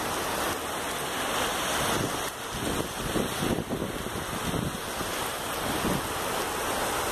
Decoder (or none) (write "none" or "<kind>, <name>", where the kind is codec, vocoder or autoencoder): none